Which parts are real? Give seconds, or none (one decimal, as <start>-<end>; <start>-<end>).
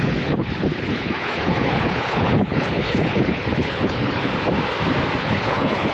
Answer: 4.3-5.2